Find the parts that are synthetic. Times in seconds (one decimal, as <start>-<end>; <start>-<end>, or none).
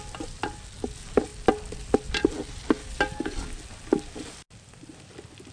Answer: none